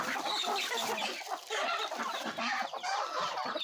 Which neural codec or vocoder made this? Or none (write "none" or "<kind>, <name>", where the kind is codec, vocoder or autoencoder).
vocoder, BigVGAN v2